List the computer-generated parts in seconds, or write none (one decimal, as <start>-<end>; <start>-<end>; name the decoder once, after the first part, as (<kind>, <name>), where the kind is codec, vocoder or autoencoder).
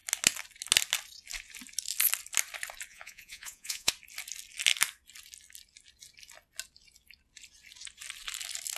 2.9-3.9 (vocoder, Vocos)